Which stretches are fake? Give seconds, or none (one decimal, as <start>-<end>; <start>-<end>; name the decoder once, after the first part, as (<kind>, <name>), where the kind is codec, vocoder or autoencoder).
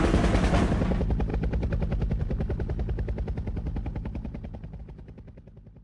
none